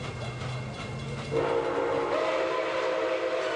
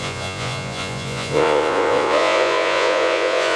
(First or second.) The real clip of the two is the first